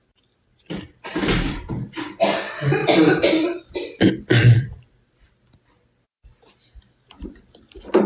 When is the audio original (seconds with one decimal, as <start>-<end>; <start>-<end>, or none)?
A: 0.0-1.1; 1.6-2.8; 5.6-8.1